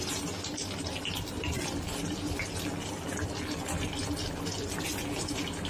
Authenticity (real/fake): real